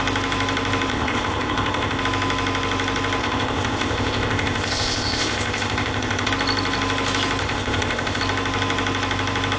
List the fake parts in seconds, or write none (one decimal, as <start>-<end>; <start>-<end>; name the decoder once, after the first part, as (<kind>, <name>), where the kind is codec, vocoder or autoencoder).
0.9-2.0 (codec, ZipCodec); 3.2-6.3; 7.4-8.2